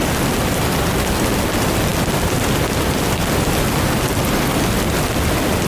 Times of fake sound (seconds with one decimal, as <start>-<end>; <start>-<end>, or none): none